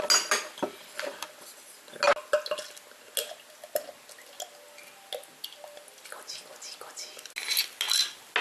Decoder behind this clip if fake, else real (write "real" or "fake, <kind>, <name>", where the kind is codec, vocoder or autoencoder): real